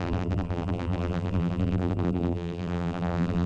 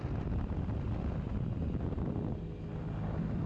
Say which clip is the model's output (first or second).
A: first